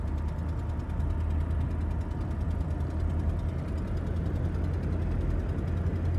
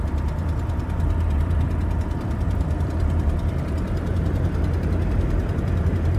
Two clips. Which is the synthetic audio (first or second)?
second